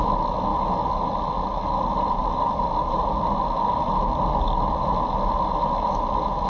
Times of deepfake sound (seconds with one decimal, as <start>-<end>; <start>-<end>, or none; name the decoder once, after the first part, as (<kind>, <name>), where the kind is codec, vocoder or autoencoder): none